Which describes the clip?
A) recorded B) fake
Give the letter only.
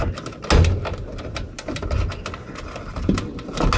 A